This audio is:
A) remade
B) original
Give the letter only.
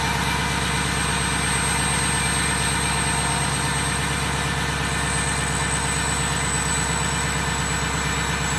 B